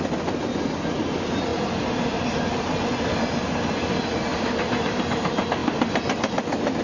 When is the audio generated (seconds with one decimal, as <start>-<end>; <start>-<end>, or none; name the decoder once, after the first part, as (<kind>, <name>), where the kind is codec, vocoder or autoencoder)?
none

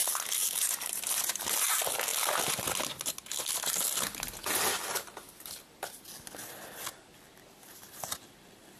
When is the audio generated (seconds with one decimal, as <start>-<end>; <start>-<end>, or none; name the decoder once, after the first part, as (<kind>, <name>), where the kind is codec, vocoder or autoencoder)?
none

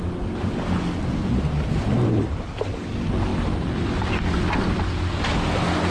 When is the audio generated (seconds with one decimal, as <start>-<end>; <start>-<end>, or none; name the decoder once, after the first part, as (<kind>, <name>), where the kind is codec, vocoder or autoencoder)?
1.2-2.5 (vocoder, BigVGAN v2); 3.3-4.3

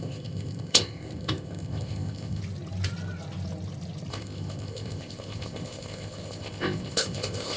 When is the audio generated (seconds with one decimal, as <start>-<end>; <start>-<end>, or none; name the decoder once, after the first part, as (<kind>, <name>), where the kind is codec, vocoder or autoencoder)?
0.0-2.4 (codec, ZipCodec); 4.1-7.6

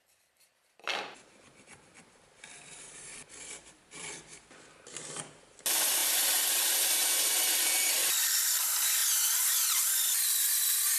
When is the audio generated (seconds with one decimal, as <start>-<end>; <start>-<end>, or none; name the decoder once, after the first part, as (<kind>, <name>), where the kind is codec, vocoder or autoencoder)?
0.9-5.2 (vocoder, BigVGAN v2); 6.0-7.0

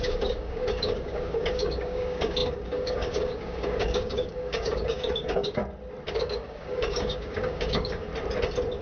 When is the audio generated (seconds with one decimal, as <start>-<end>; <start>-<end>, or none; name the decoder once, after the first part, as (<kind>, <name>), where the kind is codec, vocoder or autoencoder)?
0.0-5.6 (codec, DAC); 6.1-8.1

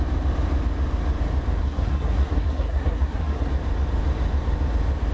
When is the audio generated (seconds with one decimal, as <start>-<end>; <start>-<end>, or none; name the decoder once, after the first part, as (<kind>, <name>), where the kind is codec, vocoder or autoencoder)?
1.6-3.5 (codec, SNAC)